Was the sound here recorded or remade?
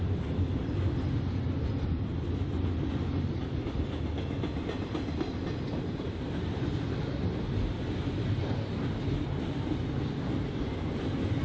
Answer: recorded